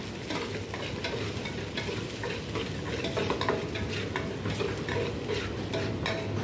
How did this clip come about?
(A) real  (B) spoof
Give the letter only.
A